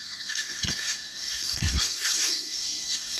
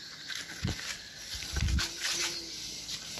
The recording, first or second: second